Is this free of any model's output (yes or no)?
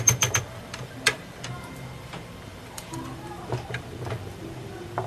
no